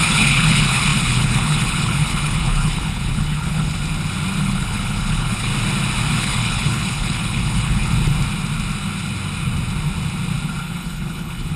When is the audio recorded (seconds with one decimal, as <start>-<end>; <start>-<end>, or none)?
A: 3.7-4.4; 5.5-6.2; 7.9-10.6